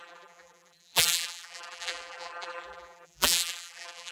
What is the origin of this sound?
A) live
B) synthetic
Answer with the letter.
B